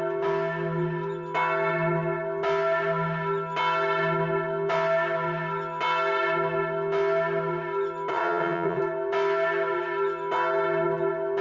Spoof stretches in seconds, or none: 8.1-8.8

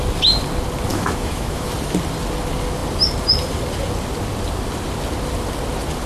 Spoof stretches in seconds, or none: 0.9-1.7

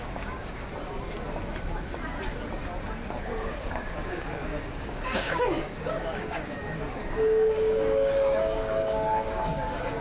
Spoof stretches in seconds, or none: 0.0-0.7; 3.2-10.0

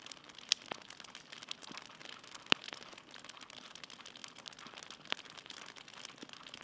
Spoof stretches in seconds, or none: 0.0-2.0; 3.2-4.2

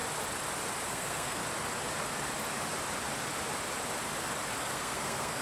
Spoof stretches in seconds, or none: 0.9-1.4; 4.6-5.4